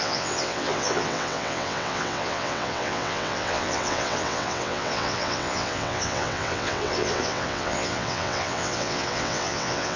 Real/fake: fake